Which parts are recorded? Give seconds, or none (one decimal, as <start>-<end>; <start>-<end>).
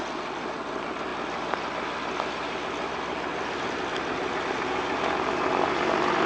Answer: 0.0-6.3